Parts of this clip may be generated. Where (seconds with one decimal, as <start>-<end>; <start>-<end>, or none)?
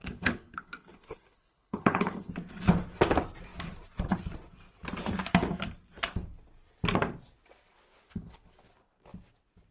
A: 0.0-2.3; 8.0-8.7